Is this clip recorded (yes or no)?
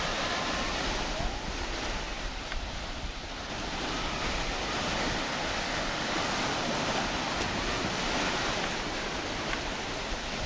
no